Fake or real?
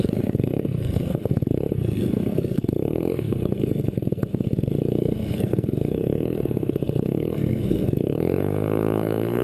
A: fake